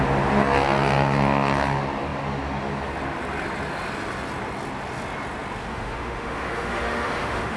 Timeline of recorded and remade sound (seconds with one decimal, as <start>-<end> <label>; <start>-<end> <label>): 0.0-5.7 recorded; 5.7-7.6 remade